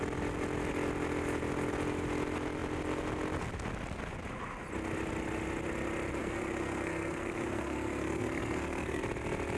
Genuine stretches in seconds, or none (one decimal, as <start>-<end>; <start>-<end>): 0.0-6.2; 9.0-9.6